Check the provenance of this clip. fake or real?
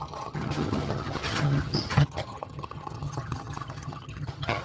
fake